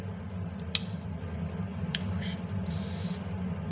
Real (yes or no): yes